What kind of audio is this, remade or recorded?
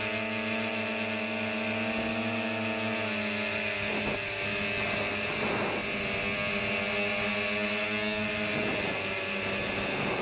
recorded